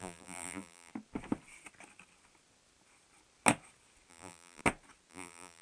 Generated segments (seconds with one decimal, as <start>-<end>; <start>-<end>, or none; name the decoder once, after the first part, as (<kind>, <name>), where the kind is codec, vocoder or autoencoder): 0.0-0.9 (vocoder, BigVGAN v2); 4.1-4.6; 5.1-5.6